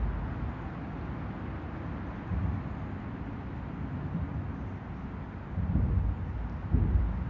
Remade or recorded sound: recorded